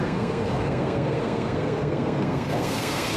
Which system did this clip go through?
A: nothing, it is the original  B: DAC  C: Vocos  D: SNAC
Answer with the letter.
D